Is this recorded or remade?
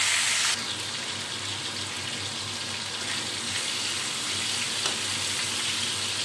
recorded